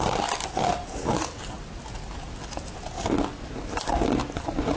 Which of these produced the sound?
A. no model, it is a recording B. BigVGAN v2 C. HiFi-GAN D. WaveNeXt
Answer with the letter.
A